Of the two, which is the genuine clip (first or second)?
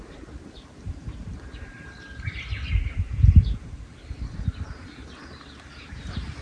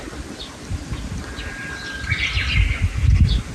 second